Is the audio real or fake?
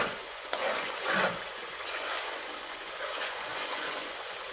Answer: fake